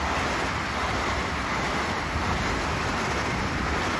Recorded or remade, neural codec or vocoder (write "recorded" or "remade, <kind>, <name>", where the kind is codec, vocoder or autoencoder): recorded